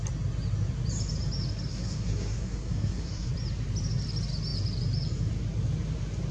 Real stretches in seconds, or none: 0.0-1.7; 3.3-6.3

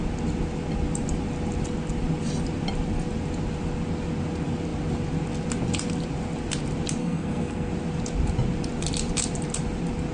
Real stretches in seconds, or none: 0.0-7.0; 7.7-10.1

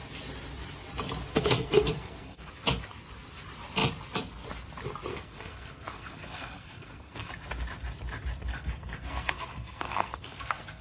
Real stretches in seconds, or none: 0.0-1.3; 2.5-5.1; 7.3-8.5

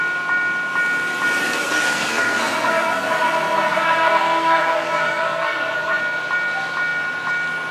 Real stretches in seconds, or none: 0.0-1.4; 6.0-7.7

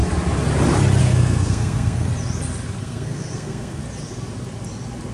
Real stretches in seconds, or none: 0.0-1.0; 2.1-2.8; 3.8-5.1

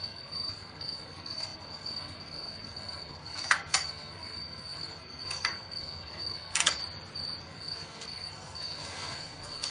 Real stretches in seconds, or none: 6.8-7.4